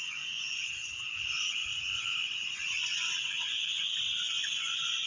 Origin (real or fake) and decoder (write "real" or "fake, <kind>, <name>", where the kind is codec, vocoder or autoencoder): fake, vocoder, Vocos